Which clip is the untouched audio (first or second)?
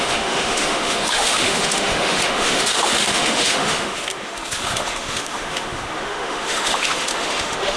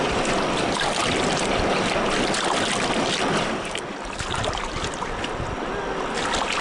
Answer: second